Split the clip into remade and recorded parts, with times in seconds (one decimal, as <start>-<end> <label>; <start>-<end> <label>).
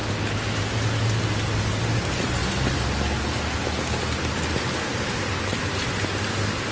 0.0-6.7 recorded